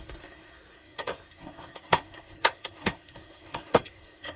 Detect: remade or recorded remade